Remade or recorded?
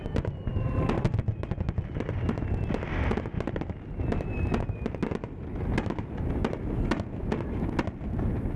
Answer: recorded